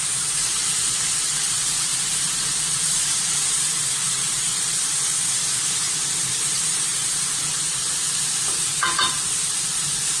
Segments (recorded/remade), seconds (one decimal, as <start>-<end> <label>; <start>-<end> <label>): 0.0-4.7 remade; 4.7-6.3 recorded; 6.3-10.2 remade